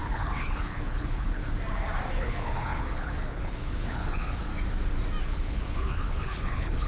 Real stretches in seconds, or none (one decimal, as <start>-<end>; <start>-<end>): 1.4-2.2; 4.5-5.2